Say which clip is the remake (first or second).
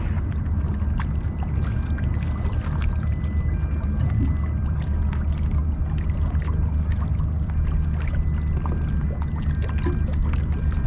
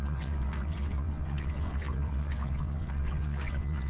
second